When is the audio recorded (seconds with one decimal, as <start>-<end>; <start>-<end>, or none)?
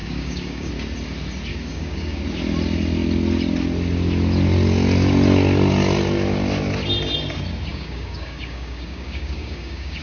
0.7-1.5; 2.2-7.7